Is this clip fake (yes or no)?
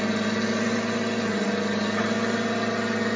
no